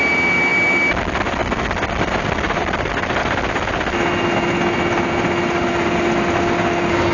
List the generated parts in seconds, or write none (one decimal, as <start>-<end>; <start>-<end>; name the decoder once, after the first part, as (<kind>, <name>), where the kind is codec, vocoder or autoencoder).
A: none